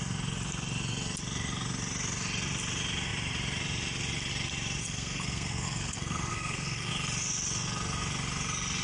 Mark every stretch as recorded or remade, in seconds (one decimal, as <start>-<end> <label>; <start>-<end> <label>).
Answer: 0.0-4.8 recorded; 4.8-6.9 remade; 6.9-8.8 recorded